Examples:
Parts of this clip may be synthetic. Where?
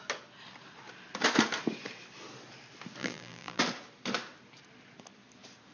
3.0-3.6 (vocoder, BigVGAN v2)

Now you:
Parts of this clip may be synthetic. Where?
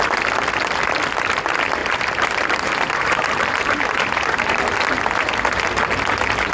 1.8-4.6 (vocoder, BigVGAN v2)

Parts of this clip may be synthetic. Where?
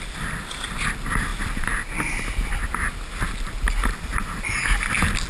none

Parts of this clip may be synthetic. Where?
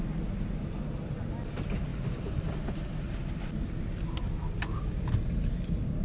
1.9-2.7 (vocoder, BigVGAN v2)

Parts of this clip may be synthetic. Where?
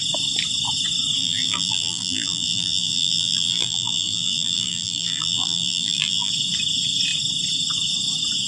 1.2-6.3 (vocoder, BigVGAN v2)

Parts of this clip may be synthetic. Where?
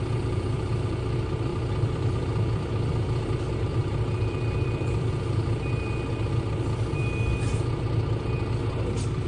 1.5-3.3 (vocoder, BigVGAN v2); 3.7-5.1